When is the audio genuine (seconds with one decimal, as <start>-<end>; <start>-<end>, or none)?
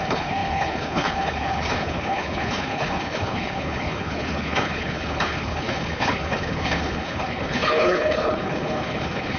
none